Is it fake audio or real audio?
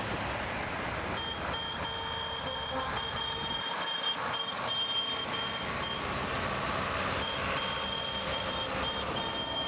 real